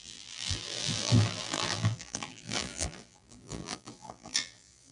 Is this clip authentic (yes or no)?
no